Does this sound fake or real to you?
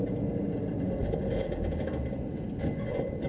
real